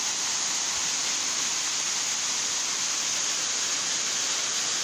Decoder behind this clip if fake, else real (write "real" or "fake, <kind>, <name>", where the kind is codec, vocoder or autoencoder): real